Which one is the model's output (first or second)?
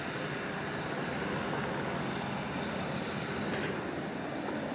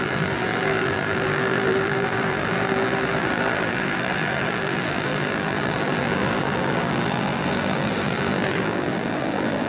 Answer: second